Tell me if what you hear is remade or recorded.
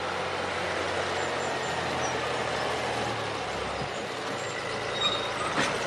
recorded